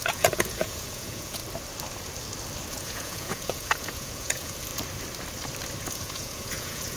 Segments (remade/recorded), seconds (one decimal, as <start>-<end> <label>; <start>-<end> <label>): 0.0-1.4 remade; 1.4-2.7 recorded; 2.7-4.7 remade; 4.7-5.8 recorded; 5.8-7.0 remade